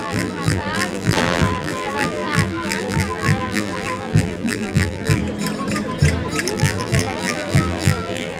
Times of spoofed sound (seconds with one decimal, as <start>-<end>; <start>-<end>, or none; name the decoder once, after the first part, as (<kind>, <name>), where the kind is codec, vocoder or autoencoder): 0.0-5.2 (vocoder, BigVGAN v2); 6.5-8.4